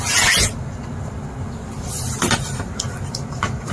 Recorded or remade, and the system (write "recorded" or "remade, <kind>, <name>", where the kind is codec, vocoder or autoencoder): recorded